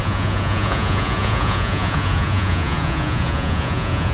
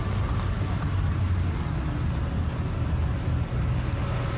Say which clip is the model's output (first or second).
first